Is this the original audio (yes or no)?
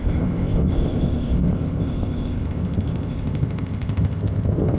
no